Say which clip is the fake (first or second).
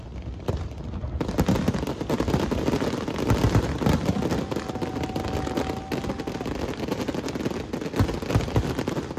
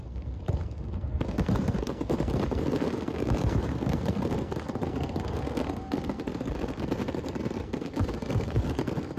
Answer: second